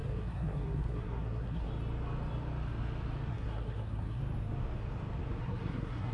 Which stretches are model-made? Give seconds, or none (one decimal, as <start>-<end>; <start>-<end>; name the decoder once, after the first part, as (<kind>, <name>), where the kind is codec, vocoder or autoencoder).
0.0-1.7 (codec, SNAC); 3.3-4.2; 5.4-6.1